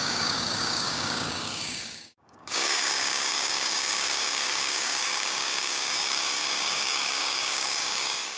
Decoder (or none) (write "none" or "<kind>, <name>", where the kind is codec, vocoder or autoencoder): codec, DAC